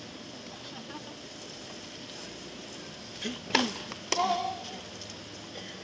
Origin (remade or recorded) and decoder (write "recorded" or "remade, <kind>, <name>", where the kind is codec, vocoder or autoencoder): recorded